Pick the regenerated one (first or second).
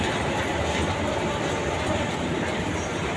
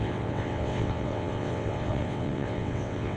second